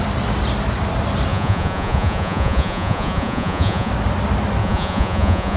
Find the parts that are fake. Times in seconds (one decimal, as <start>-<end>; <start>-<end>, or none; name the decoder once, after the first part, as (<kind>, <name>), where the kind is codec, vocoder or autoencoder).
1.3-3.9 (vocoder, Vocos); 4.6-5.6